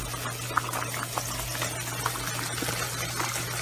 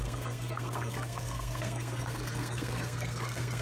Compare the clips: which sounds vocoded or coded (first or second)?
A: second